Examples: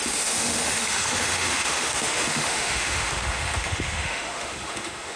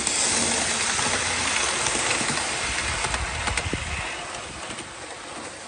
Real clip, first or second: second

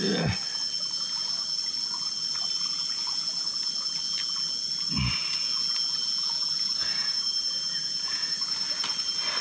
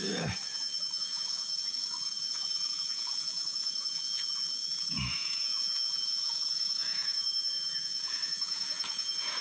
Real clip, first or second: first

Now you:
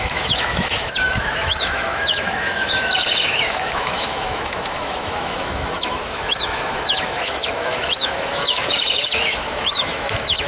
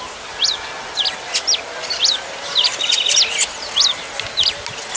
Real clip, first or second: second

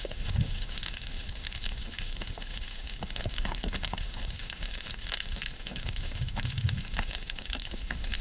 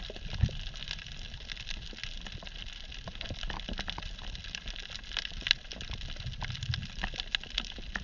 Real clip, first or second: second